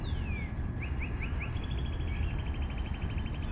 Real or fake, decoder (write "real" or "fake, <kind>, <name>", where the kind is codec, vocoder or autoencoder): real